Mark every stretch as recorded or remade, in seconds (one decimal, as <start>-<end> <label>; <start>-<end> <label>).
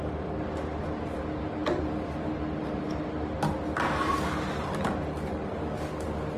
0.0-6.4 recorded